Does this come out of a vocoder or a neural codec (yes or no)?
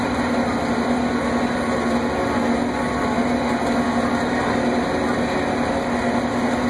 no